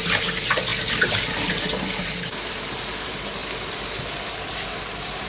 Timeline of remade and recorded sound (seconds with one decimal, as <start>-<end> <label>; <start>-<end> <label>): 0.0-3.4 remade; 3.4-4.4 recorded; 4.4-5.3 remade